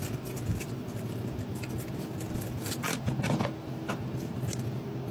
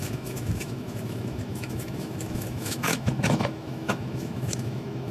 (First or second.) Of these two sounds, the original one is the first